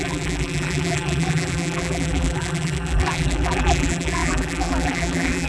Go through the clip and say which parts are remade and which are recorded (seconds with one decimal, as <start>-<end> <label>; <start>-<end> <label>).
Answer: 0.0-5.5 remade